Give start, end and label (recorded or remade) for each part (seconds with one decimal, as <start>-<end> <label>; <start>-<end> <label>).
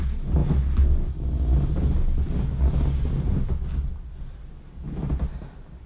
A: 0.0-5.9 recorded